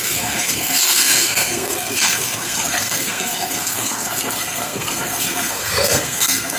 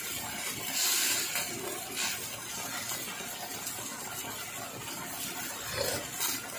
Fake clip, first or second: first